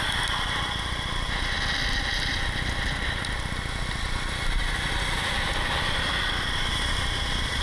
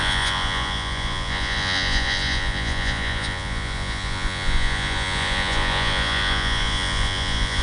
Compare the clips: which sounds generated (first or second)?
second